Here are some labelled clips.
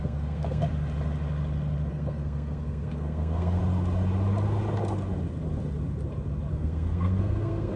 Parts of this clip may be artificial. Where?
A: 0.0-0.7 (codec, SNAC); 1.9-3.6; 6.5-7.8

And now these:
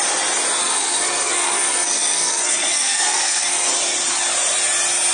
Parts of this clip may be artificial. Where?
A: 0.6-3.7 (codec, SNAC)

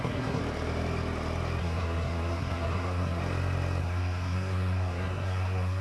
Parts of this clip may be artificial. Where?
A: 0.0-0.4 (codec, SNAC); 1.6-3.2; 3.8-5.8

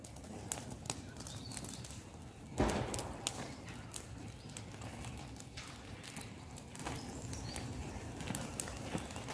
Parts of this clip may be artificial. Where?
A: none